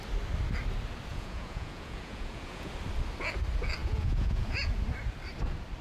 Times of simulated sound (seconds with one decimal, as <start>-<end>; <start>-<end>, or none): 1.1-2.7; 3.8-4.7